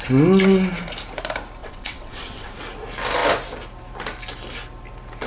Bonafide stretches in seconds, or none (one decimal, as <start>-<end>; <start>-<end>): 0.0-1.6; 2.6-5.3

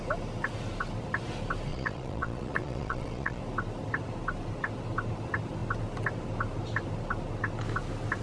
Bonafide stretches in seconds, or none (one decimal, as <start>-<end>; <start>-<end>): 0.0-1.7; 3.4-8.2

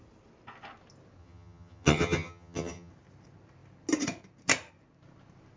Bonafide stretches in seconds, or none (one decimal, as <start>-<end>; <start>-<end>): 0.0-1.2; 2.9-5.6